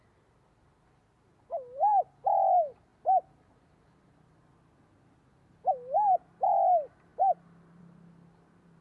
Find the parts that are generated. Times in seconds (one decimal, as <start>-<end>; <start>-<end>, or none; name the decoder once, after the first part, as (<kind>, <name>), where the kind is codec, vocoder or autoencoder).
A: none